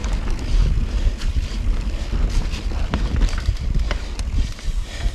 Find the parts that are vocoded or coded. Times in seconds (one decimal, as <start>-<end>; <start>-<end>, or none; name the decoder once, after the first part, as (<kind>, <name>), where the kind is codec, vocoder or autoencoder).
none